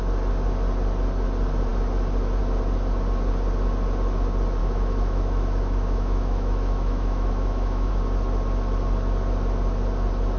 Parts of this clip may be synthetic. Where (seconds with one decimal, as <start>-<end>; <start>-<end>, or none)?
4.6-7.9